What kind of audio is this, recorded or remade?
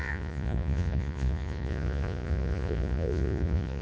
remade